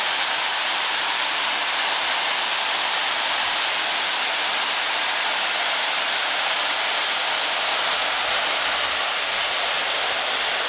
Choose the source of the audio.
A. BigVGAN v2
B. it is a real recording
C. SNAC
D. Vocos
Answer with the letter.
B